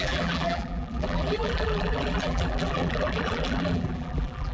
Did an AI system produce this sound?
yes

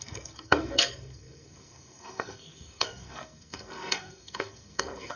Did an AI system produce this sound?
yes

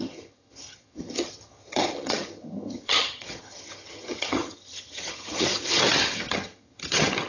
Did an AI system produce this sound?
yes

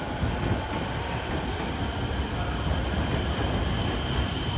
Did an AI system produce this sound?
no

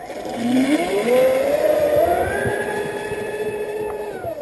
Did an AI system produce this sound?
no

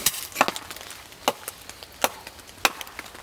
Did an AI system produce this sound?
no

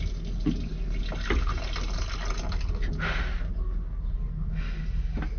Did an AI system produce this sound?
no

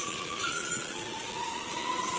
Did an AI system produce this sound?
yes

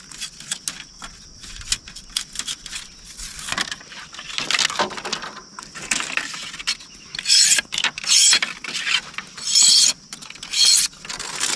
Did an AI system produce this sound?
no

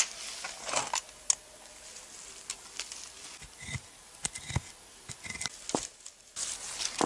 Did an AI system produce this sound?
no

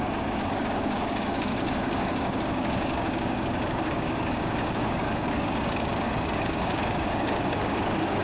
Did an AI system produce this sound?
yes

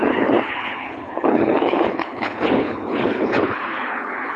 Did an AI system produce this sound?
yes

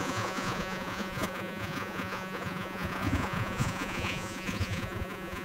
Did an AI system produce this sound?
yes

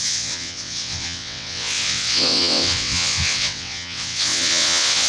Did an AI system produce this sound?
yes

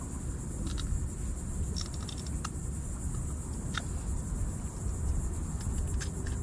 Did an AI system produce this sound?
no